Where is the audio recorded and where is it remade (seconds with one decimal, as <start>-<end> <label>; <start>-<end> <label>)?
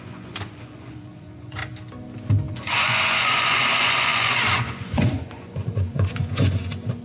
0.0-1.6 remade; 1.6-2.5 recorded; 2.5-7.0 remade